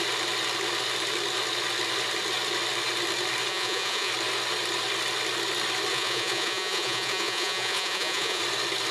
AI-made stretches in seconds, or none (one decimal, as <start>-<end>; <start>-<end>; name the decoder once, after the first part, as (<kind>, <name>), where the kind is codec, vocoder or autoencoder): 3.5-4.1 (vocoder, Vocos); 5.9-8.4